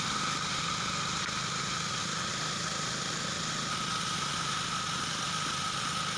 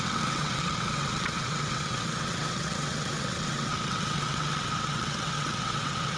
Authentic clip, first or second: first